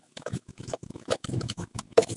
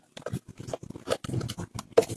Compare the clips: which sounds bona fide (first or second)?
second